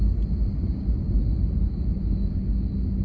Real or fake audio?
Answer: real